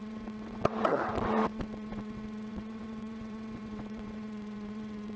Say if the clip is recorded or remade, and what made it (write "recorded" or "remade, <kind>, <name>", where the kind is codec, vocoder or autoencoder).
remade, vocoder, WaveNeXt